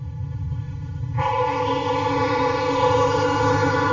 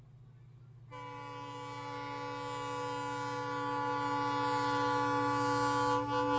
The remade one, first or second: first